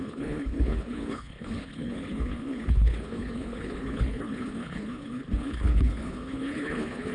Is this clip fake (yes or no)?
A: yes